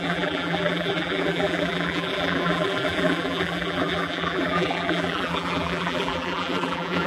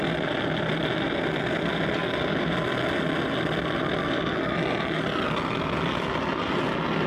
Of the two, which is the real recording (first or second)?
second